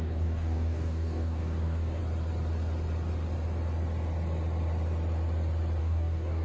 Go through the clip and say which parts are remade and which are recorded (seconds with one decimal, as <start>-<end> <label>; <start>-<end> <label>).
0.0-2.0 remade; 2.0-5.8 recorded; 5.8-6.4 remade